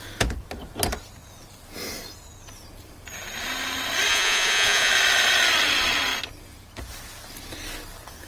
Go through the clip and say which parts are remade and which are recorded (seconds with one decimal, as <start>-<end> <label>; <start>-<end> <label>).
0.0-4.1 recorded; 4.1-4.9 remade; 4.9-8.3 recorded